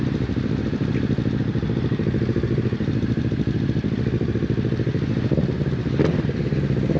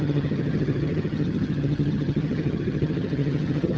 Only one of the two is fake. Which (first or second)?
second